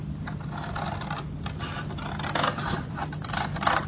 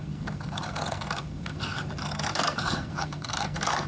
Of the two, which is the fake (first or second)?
second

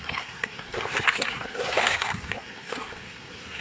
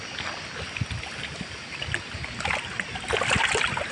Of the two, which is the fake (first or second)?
first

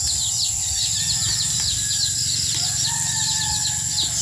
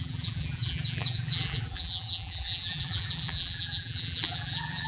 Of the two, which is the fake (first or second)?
second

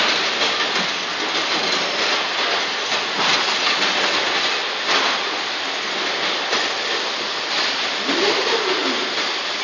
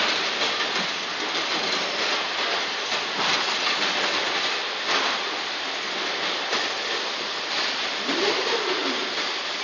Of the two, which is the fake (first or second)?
second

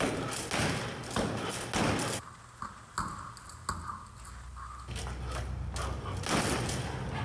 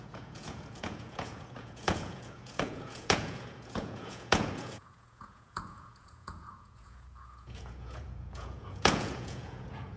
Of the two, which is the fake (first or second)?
second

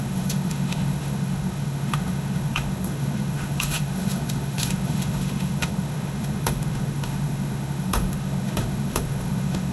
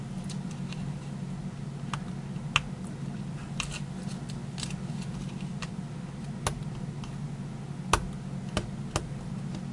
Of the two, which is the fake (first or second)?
first